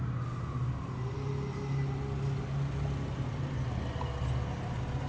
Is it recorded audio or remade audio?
recorded